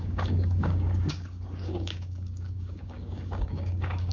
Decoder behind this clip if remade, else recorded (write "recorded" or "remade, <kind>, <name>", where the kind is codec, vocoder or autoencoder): remade, codec, DAC